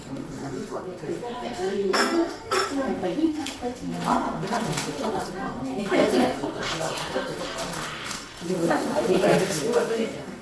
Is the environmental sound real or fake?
fake